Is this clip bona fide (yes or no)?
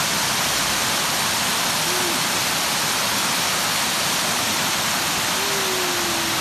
yes